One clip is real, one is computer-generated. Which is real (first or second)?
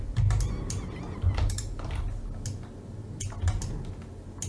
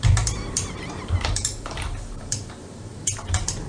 first